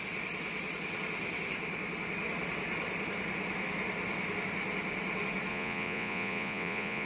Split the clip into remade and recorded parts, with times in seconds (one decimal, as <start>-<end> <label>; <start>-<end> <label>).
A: 0.0-5.5 recorded; 5.5-7.1 remade